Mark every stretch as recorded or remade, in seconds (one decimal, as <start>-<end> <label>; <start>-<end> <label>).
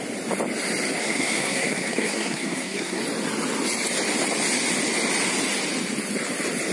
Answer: 0.0-1.0 recorded; 1.0-3.0 remade; 3.0-6.7 recorded